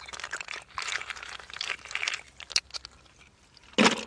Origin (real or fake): real